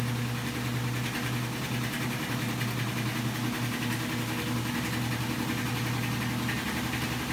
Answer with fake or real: real